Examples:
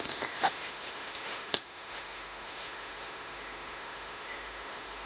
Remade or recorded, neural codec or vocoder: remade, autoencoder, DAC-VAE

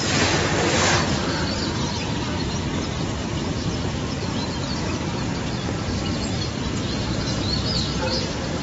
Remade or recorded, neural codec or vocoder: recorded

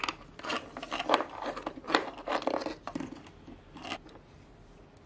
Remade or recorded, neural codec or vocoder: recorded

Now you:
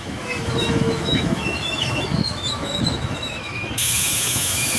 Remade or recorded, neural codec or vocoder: remade, autoencoder, DAC-VAE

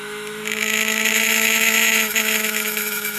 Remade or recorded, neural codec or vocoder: remade, autoencoder, DAC-VAE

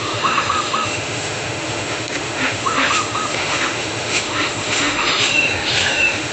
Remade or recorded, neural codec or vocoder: remade, autoencoder, DAC-VAE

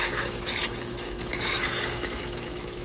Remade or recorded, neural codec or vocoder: remade, autoencoder, DAC-VAE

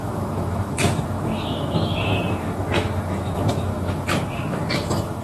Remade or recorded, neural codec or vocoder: remade, autoencoder, DAC-VAE